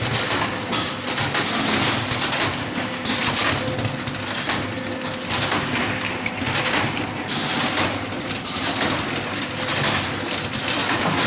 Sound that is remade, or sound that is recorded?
recorded